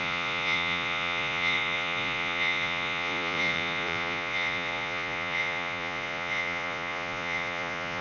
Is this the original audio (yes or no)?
no